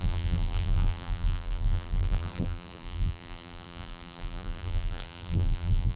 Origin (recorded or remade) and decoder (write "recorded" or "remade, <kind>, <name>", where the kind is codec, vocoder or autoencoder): remade, vocoder, BigVGAN v2